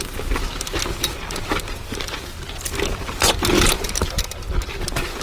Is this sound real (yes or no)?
yes